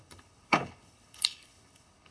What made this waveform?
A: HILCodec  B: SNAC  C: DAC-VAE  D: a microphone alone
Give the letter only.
A